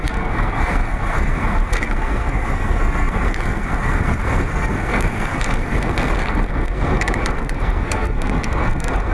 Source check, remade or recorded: remade